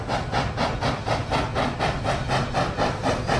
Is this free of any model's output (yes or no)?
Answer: yes